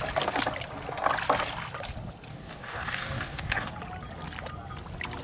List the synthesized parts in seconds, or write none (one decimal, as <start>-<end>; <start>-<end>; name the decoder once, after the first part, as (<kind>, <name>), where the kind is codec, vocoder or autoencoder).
2.3-3.7 (codec, DAC)